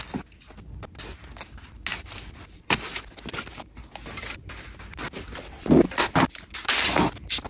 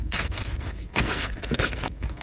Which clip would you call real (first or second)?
first